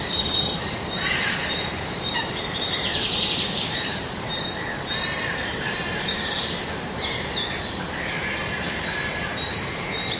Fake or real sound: fake